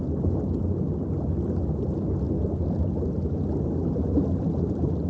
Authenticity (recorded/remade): recorded